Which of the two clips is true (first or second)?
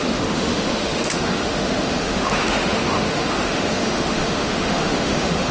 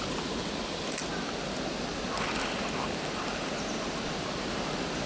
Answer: second